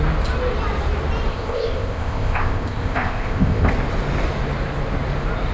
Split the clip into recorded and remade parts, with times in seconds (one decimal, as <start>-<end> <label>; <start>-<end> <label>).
0.0-1.3 recorded; 1.3-3.7 remade; 3.7-5.5 recorded